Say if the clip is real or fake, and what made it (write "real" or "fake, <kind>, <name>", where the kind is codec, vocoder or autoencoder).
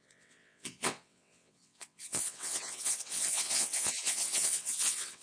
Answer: fake, vocoder, WaveNeXt